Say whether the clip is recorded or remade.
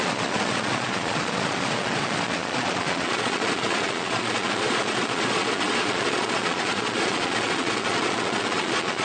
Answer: remade